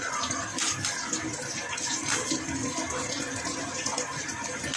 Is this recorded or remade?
recorded